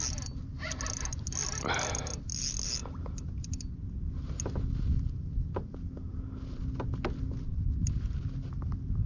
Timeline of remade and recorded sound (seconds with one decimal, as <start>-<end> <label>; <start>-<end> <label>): 0.0-9.1 recorded